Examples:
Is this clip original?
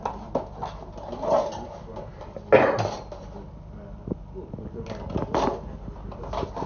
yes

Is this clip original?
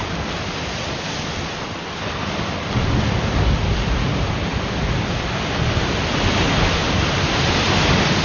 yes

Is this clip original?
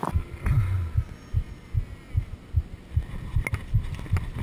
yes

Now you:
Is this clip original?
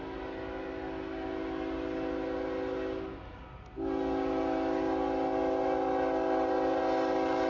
yes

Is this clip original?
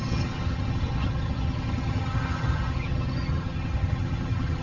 no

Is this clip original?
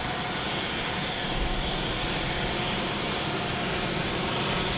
yes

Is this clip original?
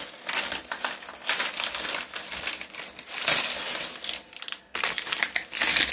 yes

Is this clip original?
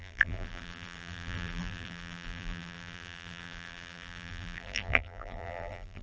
no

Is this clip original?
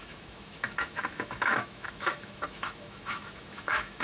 no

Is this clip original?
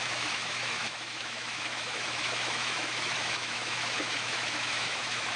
no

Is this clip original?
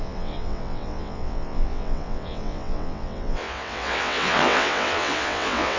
no